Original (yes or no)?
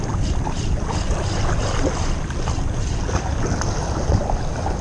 yes